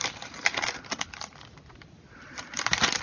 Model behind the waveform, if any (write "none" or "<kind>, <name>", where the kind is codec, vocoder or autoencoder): none